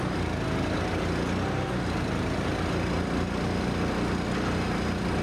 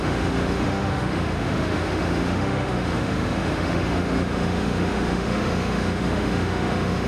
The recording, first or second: first